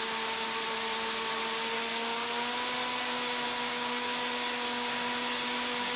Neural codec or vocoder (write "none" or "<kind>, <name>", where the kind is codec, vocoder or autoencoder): none